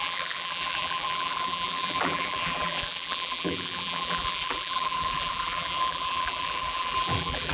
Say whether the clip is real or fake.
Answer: fake